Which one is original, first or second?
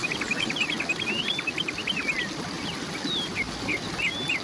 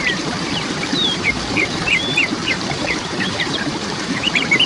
first